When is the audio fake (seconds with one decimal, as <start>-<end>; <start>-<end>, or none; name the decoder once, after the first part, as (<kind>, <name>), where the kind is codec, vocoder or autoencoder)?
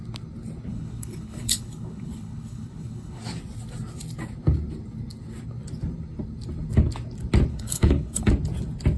0.7-3.2 (codec, HILCodec); 7.5-8.3